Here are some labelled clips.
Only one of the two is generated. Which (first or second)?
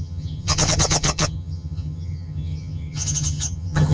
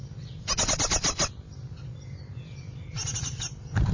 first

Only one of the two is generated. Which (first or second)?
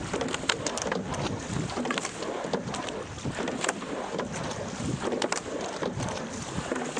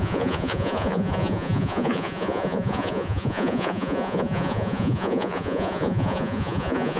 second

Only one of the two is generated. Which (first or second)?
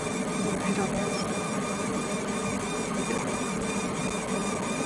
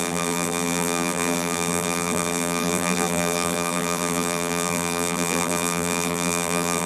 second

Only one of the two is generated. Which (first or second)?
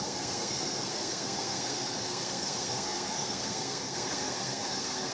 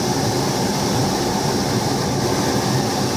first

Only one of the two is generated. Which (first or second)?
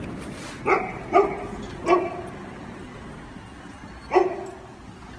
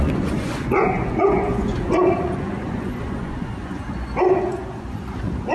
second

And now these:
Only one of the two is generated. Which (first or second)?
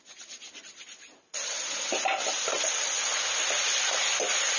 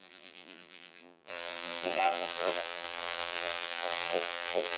second